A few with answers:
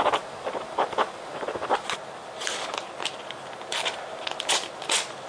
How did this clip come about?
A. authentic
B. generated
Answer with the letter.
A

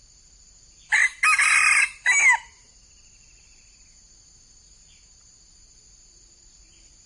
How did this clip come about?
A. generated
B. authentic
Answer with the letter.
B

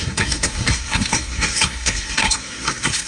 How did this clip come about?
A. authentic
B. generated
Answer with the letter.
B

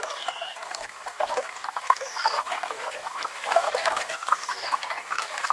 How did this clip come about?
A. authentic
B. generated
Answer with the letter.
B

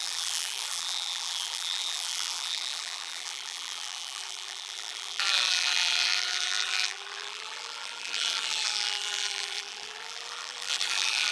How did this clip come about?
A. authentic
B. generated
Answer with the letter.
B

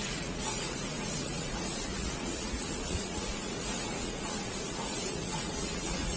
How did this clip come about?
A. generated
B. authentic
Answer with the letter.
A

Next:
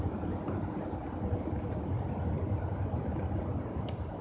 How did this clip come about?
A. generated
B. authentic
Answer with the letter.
B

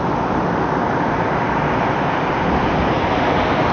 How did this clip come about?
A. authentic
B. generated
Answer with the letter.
A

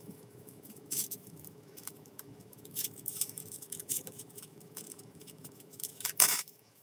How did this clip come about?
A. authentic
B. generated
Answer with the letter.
B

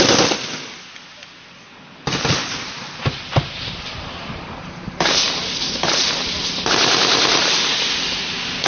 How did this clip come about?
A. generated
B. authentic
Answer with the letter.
B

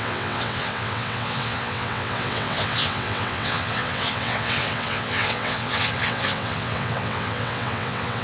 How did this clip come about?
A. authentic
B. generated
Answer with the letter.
B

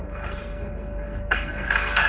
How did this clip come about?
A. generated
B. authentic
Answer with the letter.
A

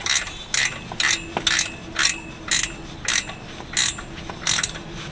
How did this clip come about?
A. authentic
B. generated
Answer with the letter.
A